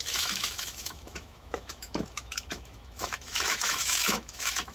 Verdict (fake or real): fake